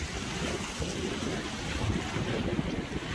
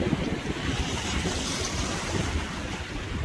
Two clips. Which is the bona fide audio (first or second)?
first